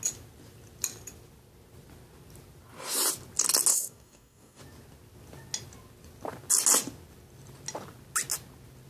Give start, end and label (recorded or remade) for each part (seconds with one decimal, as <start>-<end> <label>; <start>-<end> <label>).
0.0-3.7 recorded; 3.7-4.6 remade; 4.6-8.9 recorded